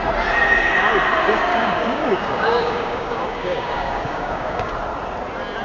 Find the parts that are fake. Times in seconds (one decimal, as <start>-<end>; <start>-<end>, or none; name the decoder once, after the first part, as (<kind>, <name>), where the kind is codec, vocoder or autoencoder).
1.5-4.7 (codec, DAC)